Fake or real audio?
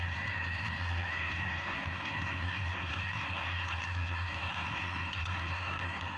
fake